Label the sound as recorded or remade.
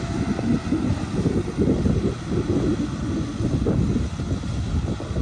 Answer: recorded